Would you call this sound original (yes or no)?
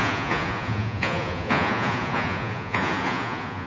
no